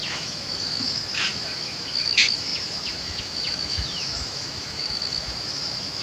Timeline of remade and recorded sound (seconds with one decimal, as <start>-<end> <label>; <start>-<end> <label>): 0.0-6.0 remade